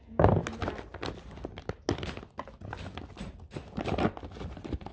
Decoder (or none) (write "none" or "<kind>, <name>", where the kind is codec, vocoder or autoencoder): none